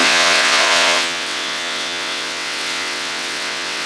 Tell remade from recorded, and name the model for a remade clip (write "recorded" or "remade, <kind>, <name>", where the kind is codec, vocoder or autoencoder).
remade, vocoder, WaveNeXt